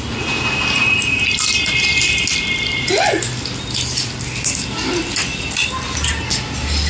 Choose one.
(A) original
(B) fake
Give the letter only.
A